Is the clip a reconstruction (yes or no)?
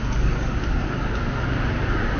yes